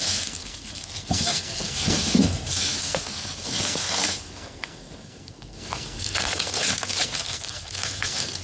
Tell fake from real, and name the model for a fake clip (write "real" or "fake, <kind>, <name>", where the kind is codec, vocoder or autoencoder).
fake, codec, SNAC